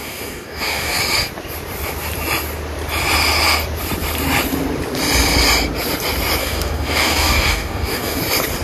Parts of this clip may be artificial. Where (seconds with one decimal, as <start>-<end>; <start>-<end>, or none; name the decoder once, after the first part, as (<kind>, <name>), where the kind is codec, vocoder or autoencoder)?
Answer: 0.0-1.0 (codec, DAC); 6.4-8.2